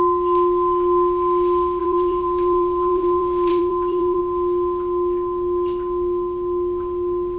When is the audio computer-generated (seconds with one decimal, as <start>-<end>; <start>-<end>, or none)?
1.8-4.2